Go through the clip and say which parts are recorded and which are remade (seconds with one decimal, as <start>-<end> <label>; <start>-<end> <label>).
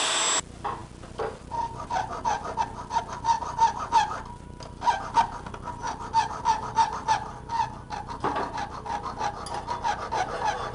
0.0-10.7 recorded